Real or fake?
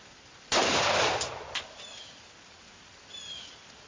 real